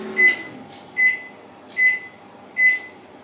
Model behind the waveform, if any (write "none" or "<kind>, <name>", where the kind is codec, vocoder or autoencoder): none